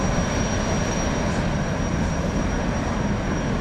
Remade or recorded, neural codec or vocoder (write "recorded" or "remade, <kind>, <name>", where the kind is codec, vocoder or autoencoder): recorded